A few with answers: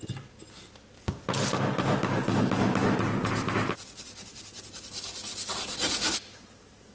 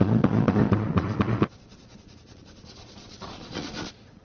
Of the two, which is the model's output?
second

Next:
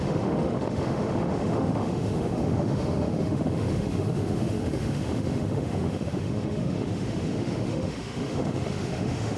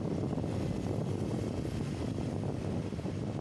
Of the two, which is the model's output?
first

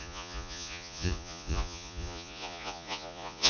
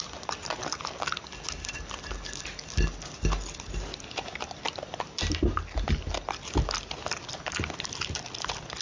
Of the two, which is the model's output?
first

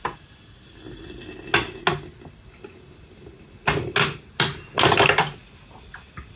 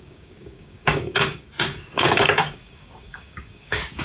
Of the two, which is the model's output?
second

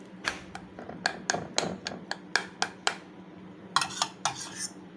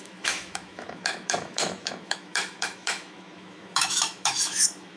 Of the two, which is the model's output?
second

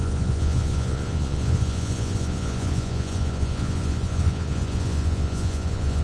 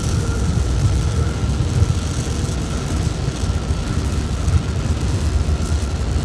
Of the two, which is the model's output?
first